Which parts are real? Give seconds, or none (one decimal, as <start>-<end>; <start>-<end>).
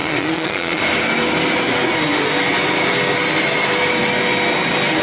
0.8-5.0